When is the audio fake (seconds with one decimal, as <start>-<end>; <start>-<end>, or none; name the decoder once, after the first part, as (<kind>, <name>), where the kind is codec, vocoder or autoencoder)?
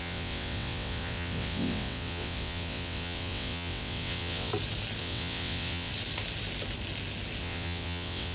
0.0-4.5 (vocoder, WaveNeXt); 5.0-5.9; 7.4-8.3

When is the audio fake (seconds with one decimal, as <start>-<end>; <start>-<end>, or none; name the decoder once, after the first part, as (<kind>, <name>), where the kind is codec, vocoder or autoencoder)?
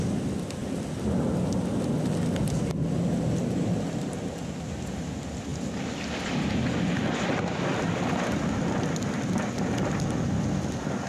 none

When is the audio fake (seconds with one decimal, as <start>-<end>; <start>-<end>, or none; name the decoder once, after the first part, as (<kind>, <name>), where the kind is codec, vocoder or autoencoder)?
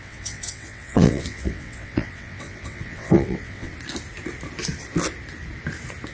0.0-3.7 (vocoder, WaveNeXt)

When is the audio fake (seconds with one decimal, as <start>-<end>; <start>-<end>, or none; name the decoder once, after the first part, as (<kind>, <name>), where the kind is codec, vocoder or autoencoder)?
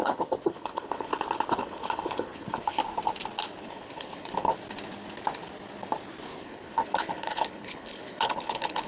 0.0-1.1 (codec, HILCodec); 1.6-2.8; 3.6-4.5; 6.4-8.9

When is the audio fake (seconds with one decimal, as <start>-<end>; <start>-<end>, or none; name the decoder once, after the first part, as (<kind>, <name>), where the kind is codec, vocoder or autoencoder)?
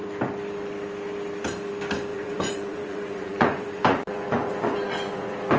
2.1-5.6 (vocoder, Vocos)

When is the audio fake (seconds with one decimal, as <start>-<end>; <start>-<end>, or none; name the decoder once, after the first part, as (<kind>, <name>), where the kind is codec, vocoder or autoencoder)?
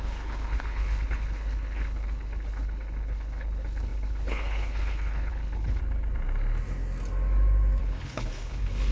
0.0-5.8 (codec, HILCodec); 7.8-8.9